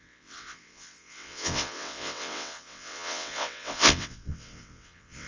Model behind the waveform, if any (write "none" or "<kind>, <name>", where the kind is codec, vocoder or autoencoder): vocoder, WaveNeXt